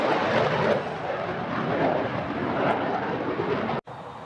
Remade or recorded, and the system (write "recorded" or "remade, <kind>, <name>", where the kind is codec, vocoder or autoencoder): recorded